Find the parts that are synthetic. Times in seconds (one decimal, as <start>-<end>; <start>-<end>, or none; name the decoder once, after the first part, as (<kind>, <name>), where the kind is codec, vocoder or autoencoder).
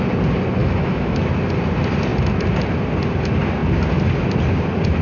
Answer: 0.6-1.2 (autoencoder, DAC-VAE)